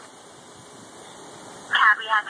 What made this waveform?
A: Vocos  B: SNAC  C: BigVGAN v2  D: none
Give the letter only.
D